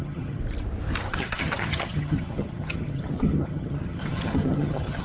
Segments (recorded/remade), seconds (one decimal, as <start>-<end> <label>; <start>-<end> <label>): 0.0-0.4 remade; 0.4-1.1 recorded; 1.1-5.0 remade